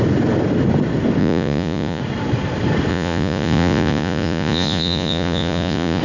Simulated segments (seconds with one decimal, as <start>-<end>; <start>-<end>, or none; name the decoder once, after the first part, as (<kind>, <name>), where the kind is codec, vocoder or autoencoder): 1.2-2.0 (vocoder, Vocos); 2.9-6.0